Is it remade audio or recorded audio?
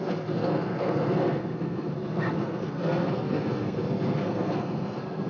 remade